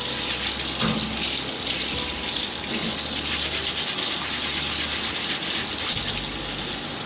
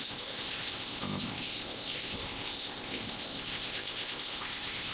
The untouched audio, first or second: first